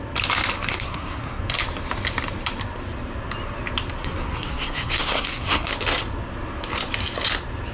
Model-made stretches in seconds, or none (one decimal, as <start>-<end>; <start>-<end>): 0.7-1.4; 4.0-5.7